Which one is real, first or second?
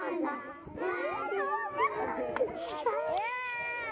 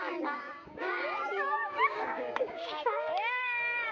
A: first